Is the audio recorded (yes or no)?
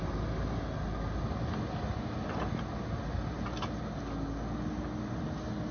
yes